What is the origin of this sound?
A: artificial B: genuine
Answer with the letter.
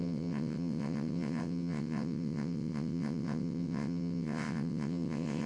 A